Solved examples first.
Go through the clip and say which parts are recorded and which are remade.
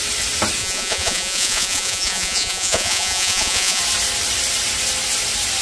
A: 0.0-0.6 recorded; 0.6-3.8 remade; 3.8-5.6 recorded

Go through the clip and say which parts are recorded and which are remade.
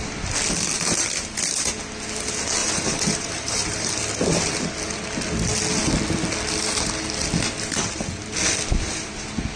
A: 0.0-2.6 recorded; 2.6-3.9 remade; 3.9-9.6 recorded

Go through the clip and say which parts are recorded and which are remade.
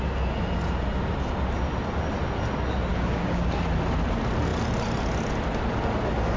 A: 0.0-2.9 recorded; 2.9-3.5 remade; 3.5-6.4 recorded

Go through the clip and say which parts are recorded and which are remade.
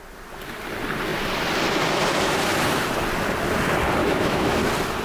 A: 0.0-4.0 recorded; 4.0-4.6 remade; 4.6-5.0 recorded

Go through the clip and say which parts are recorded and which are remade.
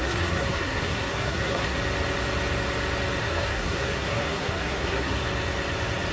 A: 0.0-1.8 remade; 1.8-3.2 recorded; 3.2-5.2 remade; 5.2-6.1 recorded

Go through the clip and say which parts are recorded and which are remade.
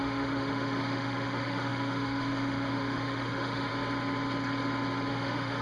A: 0.0-3.7 remade; 3.7-5.1 recorded; 5.1-5.6 remade